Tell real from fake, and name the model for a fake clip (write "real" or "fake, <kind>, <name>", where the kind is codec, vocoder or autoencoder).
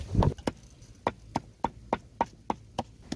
real